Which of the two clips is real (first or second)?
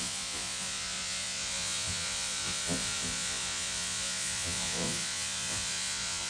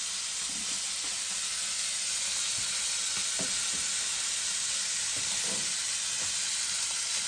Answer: second